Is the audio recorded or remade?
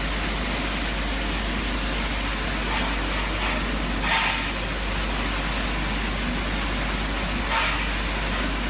recorded